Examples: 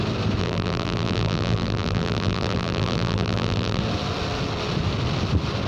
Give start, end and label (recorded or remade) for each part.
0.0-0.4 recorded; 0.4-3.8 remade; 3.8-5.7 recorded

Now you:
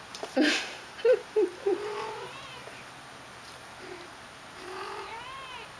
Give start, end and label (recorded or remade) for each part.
0.0-2.6 remade; 2.6-3.8 recorded; 3.8-5.8 remade

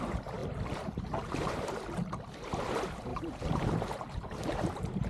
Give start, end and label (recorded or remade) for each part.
0.0-3.1 recorded; 3.1-5.1 remade

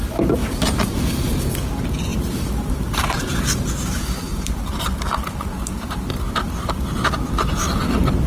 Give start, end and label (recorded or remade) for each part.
0.0-0.4 recorded; 0.4-1.0 remade; 1.0-2.1 recorded; 2.1-6.3 remade; 6.3-8.3 recorded

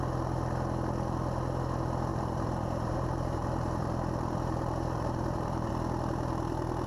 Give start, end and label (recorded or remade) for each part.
0.0-2.1 recorded; 2.1-5.7 remade; 5.7-6.9 recorded